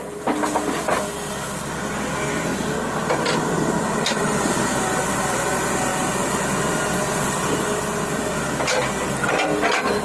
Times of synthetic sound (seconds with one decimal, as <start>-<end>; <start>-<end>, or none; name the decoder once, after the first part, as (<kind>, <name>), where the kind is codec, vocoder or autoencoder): none

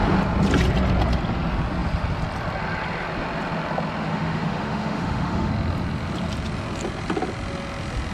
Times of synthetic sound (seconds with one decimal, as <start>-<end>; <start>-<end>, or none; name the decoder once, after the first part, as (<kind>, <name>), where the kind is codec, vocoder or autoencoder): 4.0-5.5 (autoencoder, DAC-VAE)

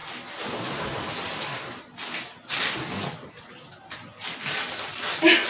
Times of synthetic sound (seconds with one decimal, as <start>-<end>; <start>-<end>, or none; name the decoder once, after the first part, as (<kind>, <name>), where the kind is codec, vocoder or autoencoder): none